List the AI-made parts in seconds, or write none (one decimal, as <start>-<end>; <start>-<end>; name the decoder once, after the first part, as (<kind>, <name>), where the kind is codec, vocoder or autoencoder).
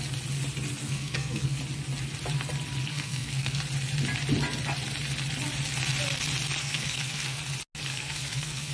0.8-1.6 (codec, SNAC); 2.9-3.6; 6.6-7.4; 7.9-8.7